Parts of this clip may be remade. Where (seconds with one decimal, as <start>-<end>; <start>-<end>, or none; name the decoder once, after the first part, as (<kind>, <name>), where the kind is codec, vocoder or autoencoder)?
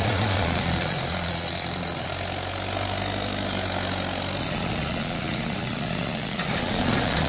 0.0-2.1 (vocoder, Vocos); 4.4-7.3